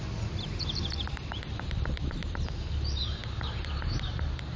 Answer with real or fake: fake